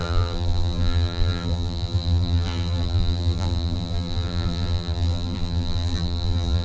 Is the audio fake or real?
fake